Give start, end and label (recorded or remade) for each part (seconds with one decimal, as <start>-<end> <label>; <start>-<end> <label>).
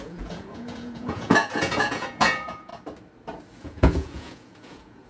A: 0.0-2.7 remade; 2.7-3.6 recorded; 3.6-5.1 remade